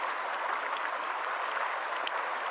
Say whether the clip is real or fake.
real